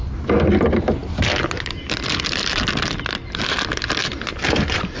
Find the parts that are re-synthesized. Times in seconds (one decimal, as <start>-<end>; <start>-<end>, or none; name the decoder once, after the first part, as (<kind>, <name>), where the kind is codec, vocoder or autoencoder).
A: none